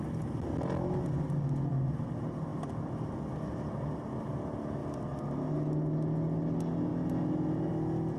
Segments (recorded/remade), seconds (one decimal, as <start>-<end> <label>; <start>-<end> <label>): 0.0-8.2 recorded